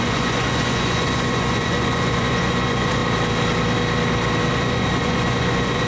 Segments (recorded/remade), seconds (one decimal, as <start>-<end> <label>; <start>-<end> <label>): 0.0-3.0 remade; 3.0-4.5 recorded; 4.5-5.9 remade